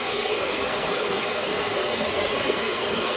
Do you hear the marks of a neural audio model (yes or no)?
yes